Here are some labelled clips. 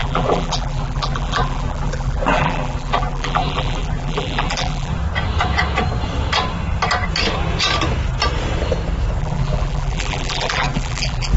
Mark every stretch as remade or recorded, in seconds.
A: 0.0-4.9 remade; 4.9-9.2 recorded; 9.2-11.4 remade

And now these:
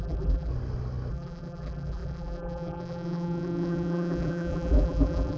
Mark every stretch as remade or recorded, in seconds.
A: 0.0-0.5 remade; 0.5-1.1 recorded; 1.1-5.4 remade

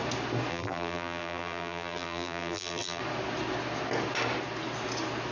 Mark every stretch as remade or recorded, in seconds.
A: 0.0-0.5 recorded; 0.5-3.0 remade; 3.0-5.3 recorded

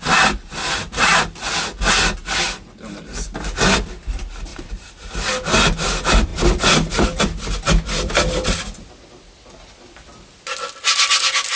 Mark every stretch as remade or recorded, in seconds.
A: 0.0-4.5 recorded; 4.5-5.1 remade; 5.1-11.6 recorded

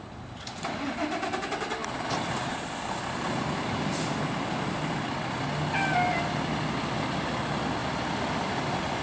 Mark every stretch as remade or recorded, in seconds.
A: 0.0-7.8 recorded; 7.8-9.0 remade